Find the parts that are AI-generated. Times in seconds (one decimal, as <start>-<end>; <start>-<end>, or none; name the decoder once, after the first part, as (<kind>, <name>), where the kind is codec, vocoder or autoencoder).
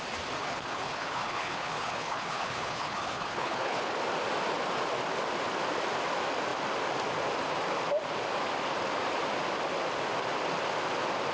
0.4-3.9 (codec, HILCodec)